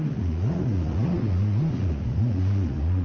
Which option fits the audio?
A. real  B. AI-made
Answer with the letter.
B